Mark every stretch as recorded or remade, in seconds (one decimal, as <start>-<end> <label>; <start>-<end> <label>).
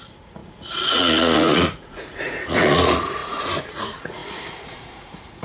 0.0-5.4 remade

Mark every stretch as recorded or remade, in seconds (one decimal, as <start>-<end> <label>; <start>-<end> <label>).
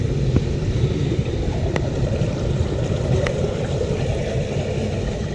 0.0-1.0 recorded; 1.0-4.2 remade; 4.2-5.3 recorded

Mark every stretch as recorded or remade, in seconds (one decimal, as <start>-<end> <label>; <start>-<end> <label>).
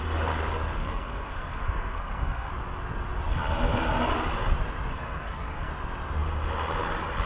0.0-0.8 recorded; 0.8-2.5 remade; 2.5-4.9 recorded; 4.9-5.7 remade; 5.7-7.3 recorded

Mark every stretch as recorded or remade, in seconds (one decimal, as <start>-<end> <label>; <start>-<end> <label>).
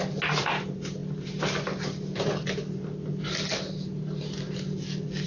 0.0-5.3 recorded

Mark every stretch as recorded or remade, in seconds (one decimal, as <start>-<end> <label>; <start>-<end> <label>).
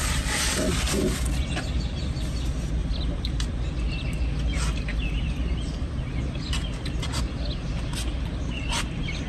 0.0-9.3 recorded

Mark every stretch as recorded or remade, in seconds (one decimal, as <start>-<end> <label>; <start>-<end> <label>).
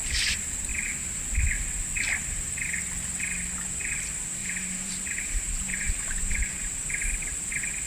0.0-4.4 recorded; 4.4-6.8 remade; 6.8-7.9 recorded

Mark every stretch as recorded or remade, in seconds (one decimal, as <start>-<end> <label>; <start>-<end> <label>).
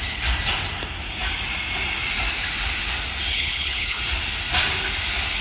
0.0-3.3 recorded; 3.3-4.0 remade; 4.0-5.4 recorded